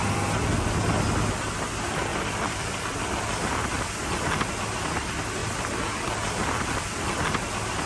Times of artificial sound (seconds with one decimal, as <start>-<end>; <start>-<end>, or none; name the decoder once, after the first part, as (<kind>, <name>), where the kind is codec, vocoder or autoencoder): 0.0-0.7 (vocoder, BigVGAN v2); 2.1-3.4; 5.4-7.2